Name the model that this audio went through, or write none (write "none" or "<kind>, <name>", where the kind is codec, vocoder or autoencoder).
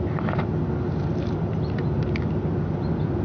none